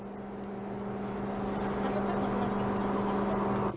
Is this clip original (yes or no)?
yes